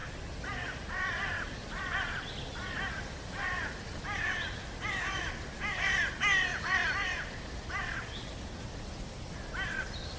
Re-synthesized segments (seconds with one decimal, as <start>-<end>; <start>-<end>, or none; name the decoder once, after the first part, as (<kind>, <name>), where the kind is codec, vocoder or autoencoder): none